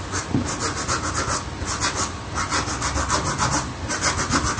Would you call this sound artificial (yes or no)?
no